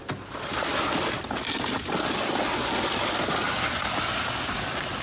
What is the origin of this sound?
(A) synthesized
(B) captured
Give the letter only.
B